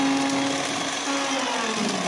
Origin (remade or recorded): recorded